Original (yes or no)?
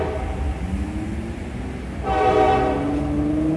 yes